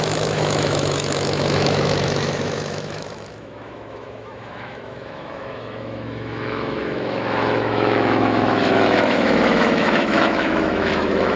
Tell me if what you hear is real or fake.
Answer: fake